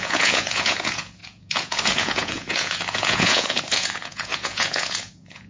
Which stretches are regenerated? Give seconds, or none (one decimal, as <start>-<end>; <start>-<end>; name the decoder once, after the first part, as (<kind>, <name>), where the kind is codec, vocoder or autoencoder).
0.0-5.5 (vocoder, Vocos)